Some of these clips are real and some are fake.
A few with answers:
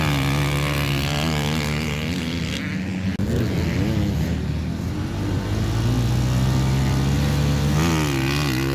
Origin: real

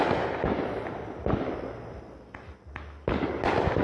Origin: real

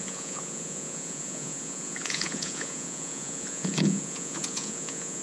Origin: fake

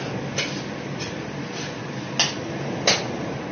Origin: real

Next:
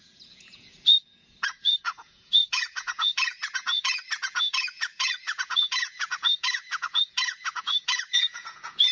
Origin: fake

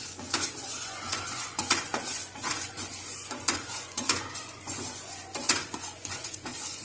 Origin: fake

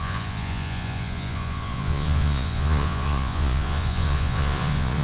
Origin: fake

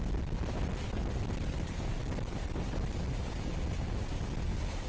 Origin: real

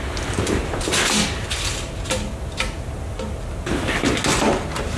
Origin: real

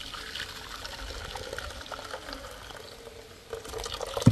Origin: real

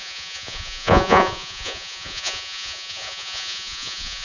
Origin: fake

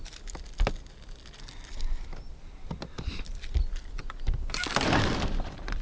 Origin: real